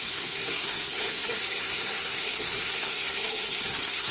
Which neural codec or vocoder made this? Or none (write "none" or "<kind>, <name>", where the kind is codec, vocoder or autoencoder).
codec, SNAC